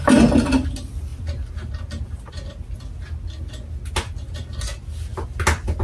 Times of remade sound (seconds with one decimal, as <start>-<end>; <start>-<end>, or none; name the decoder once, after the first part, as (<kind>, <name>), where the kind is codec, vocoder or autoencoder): none